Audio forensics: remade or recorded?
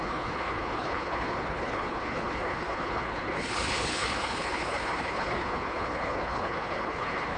remade